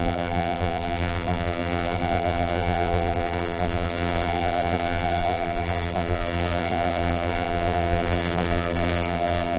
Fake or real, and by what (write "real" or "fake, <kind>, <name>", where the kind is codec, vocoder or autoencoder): fake, vocoder, BigVGAN v2